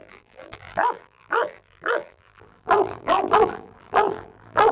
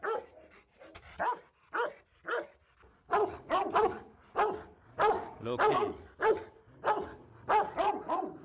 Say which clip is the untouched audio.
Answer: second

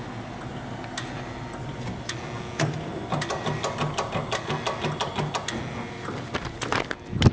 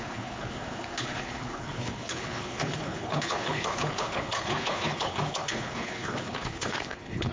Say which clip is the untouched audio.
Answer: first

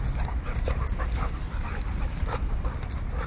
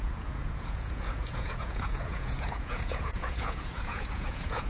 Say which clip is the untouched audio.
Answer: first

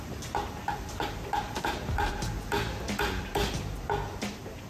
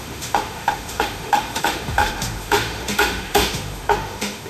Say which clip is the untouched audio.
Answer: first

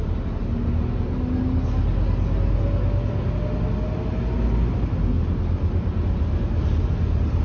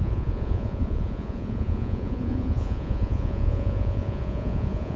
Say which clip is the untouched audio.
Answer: first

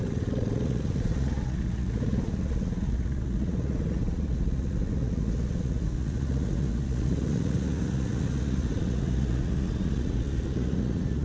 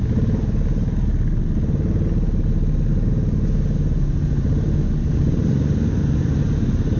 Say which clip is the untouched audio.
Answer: second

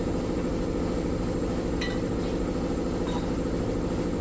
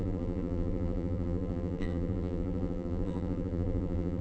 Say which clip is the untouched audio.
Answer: first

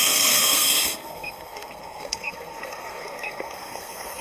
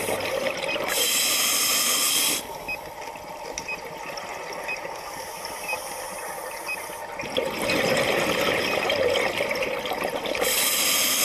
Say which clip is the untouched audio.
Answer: second